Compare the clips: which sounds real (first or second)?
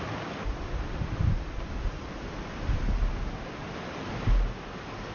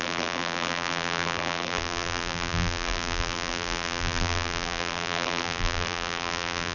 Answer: first